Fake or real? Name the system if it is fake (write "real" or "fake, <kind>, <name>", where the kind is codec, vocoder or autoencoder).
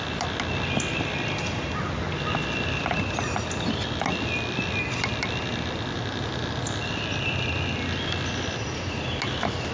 real